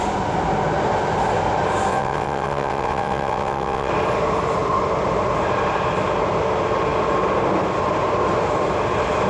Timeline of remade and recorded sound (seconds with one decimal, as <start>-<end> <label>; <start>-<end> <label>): 0.0-1.9 recorded; 1.9-3.9 remade; 3.9-9.3 recorded